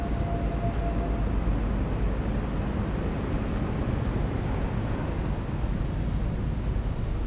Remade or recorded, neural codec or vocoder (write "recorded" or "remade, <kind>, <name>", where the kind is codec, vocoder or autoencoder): recorded